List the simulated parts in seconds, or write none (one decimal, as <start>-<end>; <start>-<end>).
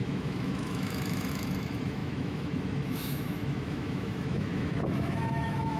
0.0-5.8